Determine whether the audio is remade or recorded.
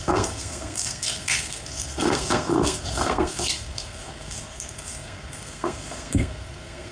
remade